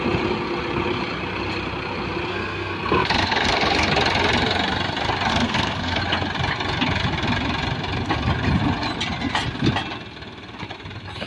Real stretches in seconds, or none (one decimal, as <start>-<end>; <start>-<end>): 0.0-2.3; 3.9-5.3; 6.0-11.3